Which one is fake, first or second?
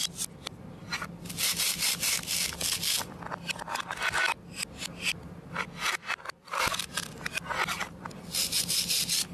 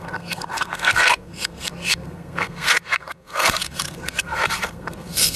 second